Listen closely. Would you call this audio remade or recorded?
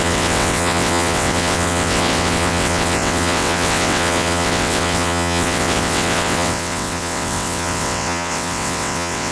remade